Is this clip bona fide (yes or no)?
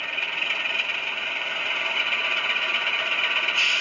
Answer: yes